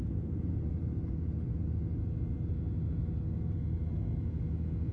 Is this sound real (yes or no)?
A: yes